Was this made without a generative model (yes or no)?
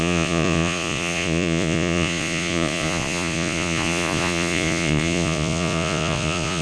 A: no